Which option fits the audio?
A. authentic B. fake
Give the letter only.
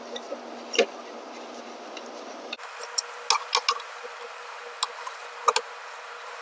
A